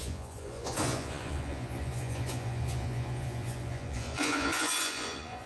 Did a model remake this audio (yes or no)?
yes